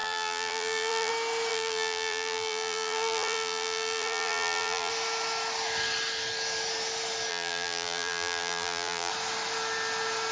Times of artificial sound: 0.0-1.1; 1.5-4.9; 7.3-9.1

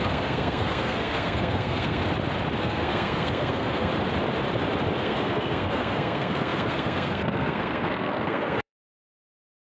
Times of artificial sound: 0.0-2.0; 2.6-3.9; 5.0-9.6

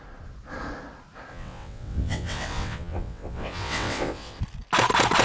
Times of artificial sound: 1.3-4.4

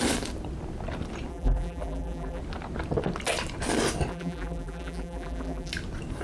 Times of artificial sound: 1.3-2.4; 4.1-5.7